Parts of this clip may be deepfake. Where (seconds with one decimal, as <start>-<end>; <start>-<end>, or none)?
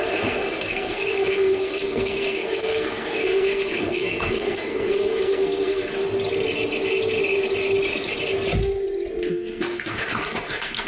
0.0-5.9; 9.3-10.9